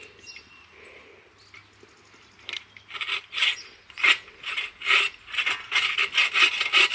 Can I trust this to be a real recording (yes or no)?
yes